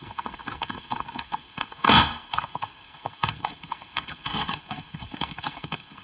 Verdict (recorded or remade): remade